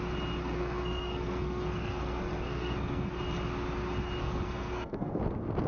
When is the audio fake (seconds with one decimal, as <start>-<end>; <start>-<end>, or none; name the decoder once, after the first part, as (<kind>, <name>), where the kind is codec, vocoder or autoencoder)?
0.4-3.1 (codec, SNAC); 4.2-5.2